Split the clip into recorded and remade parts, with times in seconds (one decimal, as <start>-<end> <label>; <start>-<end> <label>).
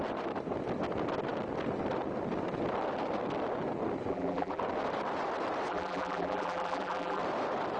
0.0-4.1 recorded; 4.1-4.6 remade; 4.6-5.7 recorded; 5.7-7.2 remade; 7.2-7.8 recorded